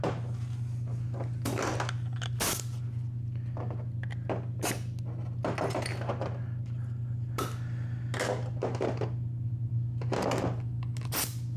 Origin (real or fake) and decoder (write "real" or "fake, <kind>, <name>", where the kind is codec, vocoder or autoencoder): real